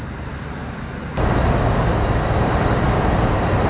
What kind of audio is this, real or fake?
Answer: real